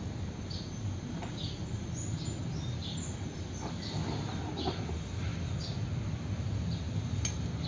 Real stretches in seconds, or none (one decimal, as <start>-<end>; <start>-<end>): 0.0-7.7